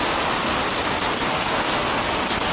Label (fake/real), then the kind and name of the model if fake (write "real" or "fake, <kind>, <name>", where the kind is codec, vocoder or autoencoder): real